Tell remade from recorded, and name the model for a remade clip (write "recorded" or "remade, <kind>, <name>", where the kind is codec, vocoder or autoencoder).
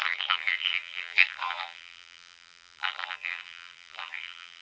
remade, vocoder, BigVGAN v2